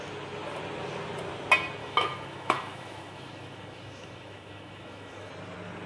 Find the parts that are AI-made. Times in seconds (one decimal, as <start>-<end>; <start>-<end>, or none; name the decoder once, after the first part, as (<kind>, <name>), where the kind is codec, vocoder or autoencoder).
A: 1.8-5.3 (autoencoder, DAC-VAE)